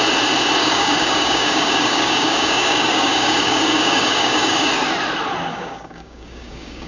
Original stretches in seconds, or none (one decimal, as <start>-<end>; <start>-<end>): 0.0-0.6; 4.7-5.5